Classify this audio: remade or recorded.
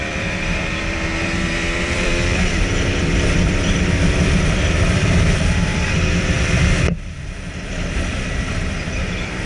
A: remade